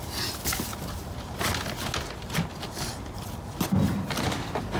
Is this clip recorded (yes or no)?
yes